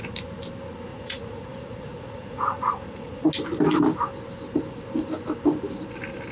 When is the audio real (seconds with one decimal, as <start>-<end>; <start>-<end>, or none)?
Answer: 0.0-0.9; 3.3-6.3